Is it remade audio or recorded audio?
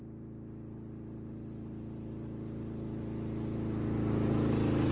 recorded